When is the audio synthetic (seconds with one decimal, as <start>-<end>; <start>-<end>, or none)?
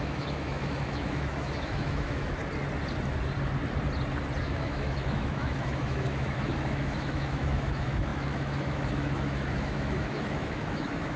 0.0-2.4; 4.4-11.2